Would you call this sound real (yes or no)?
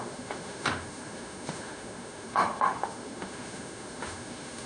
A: no